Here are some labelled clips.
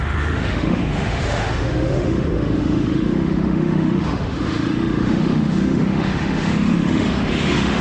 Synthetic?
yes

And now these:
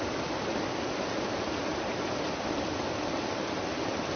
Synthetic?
no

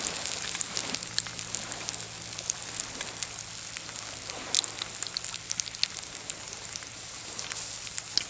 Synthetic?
no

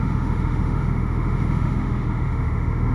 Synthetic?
yes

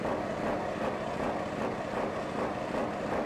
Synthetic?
no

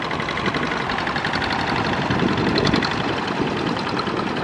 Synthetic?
no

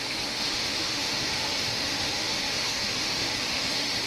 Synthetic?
yes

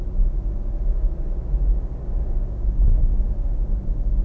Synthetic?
no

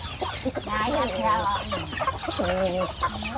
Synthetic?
no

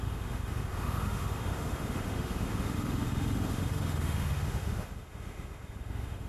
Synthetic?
yes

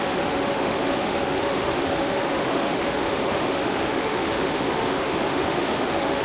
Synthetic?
yes